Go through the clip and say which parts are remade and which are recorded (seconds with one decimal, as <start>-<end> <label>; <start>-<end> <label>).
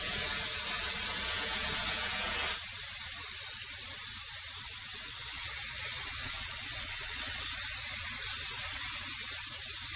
0.0-4.6 recorded; 4.6-7.5 remade; 7.5-10.0 recorded